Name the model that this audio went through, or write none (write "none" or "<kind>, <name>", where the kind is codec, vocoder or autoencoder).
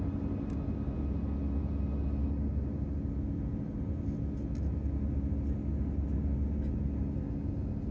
none